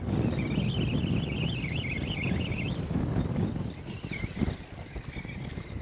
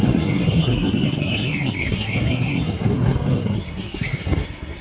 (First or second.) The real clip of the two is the first